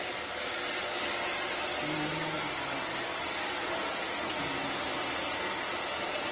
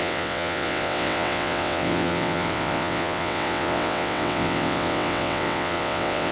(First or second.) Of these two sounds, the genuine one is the first